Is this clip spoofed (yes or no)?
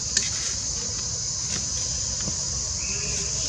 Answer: no